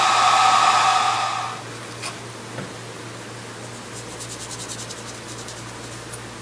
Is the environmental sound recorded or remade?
recorded